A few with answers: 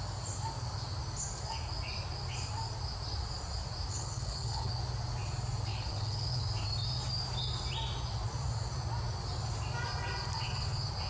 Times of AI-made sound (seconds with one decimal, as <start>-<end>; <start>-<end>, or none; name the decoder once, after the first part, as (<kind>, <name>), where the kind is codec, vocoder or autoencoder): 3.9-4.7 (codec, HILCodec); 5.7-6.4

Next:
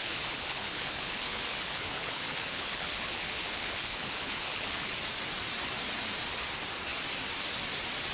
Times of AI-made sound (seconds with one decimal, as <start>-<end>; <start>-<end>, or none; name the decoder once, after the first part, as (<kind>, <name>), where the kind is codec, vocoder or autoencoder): 0.0-4.9 (codec, HILCodec)

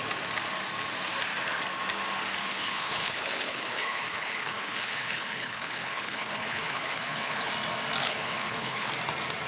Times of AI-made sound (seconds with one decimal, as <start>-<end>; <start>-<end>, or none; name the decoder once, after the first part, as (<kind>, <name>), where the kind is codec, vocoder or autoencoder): 2.4-7.5 (codec, HILCodec); 8.0-8.9

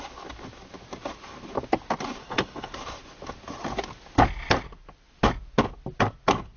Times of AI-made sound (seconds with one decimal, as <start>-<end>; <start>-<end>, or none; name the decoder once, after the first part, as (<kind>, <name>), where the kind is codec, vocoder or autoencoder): 2.2-2.7 (codec, HILCodec)

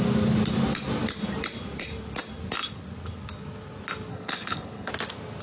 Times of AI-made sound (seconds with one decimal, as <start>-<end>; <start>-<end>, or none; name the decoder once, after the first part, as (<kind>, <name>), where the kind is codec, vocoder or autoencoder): 4.1-4.9 (codec, HILCodec)

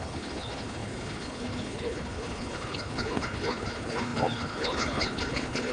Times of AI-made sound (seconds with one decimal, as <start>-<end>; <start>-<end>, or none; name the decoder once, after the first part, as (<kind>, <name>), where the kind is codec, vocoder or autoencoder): 0.0-5.7 (codec, HILCodec)

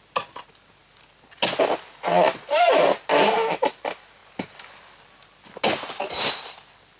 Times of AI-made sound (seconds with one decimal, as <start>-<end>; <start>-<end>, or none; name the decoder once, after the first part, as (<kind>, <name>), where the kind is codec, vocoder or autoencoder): none

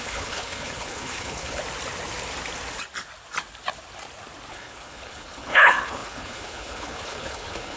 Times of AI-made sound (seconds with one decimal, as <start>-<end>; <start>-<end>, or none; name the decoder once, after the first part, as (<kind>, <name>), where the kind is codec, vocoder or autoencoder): 0.0-1.6 (codec, HILCodec); 4.5-7.8